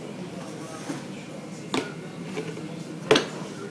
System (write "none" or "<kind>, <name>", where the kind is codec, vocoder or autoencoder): none